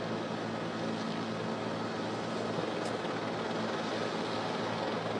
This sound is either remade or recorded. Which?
recorded